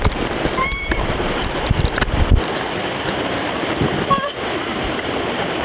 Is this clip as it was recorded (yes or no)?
no